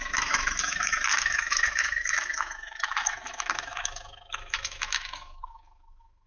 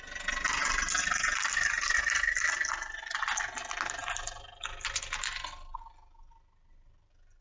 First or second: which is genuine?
second